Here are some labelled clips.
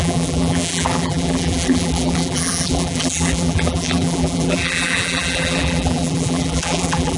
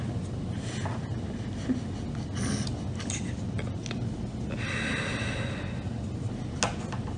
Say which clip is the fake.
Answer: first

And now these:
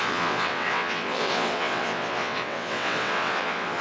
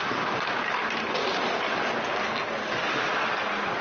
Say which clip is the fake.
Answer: first